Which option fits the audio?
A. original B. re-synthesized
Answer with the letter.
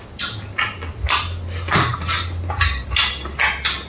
A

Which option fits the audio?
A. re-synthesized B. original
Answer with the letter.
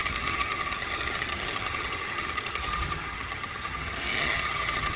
A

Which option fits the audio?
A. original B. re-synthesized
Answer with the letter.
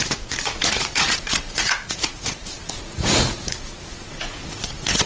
B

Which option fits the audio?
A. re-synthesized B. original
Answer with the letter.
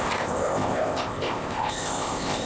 A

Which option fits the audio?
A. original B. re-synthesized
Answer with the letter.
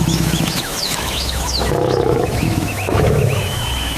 B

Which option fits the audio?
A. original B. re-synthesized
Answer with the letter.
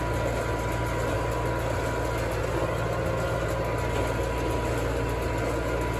A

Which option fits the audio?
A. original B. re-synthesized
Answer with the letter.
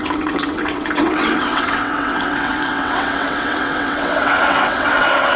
B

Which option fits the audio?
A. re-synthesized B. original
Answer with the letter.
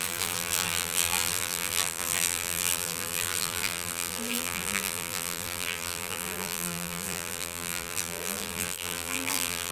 A